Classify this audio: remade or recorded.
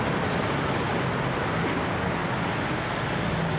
recorded